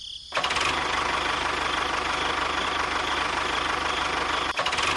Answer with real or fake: real